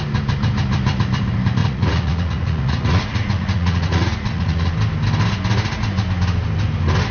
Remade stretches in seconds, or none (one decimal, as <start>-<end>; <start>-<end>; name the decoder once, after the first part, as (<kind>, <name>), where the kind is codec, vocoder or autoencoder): 1.6-4.7 (vocoder, Vocos)